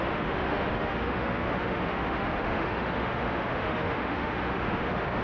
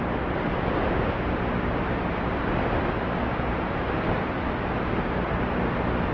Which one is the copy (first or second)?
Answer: first